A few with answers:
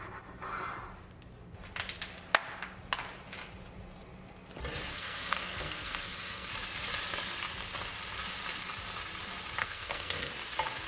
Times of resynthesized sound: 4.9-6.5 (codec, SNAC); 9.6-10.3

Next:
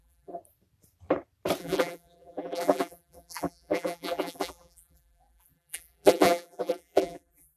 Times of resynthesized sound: 0.0-0.4 (vocoder, BigVGAN v2); 1.6-7.6

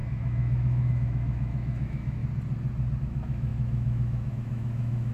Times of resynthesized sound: 0.0-2.2 (autoencoder, DAC-VAE); 3.0-5.1

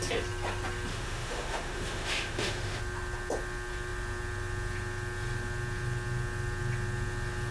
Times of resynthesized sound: 0.9-2.8 (autoencoder, DAC-VAE)

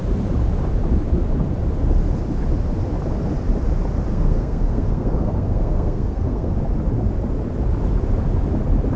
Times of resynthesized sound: 4.1-6.5 (codec, SNAC)

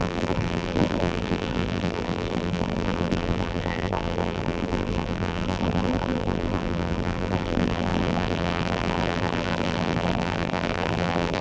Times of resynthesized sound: 0.0-11.4 (vocoder, BigVGAN v2)